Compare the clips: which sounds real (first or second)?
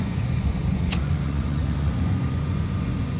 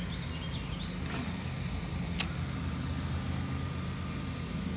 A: second